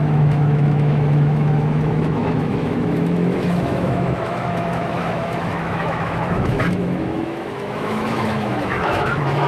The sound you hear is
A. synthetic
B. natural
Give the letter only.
A